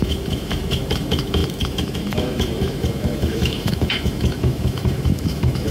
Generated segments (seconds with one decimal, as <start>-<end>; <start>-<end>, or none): 0.0-5.7